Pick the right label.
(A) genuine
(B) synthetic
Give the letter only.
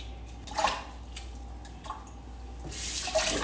A